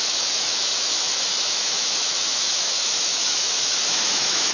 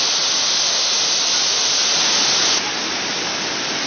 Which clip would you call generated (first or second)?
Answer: first